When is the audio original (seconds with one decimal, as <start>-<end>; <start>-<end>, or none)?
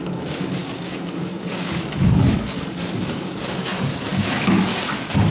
none